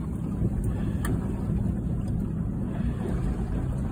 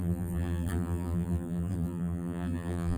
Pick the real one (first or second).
first